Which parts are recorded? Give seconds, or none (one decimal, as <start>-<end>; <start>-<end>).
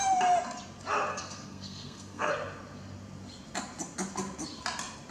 0.0-1.1; 2.3-5.1